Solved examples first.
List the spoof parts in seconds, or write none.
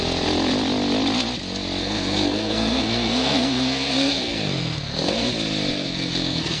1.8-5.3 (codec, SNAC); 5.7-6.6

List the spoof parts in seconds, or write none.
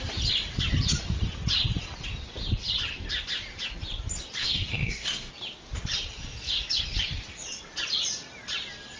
4.4-5.3 (codec, SNAC)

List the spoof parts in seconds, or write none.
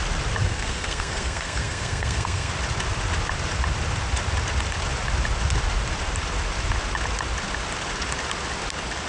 0.4-2.5 (codec, SNAC)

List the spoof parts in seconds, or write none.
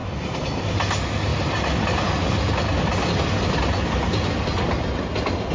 none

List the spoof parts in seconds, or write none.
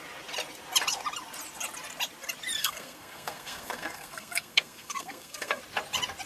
2.6-5.6 (codec, SNAC)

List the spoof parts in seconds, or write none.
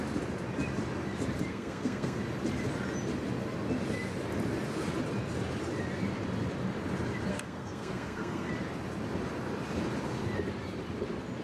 1.5-2.2 (codec, SNAC); 7.3-8.5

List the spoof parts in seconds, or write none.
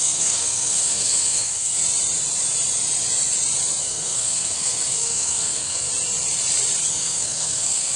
0.0-1.8 (codec, SNAC); 3.8-5.9; 6.9-8.0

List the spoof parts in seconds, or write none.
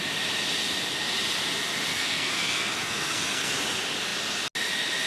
1.9-3.5 (codec, SNAC)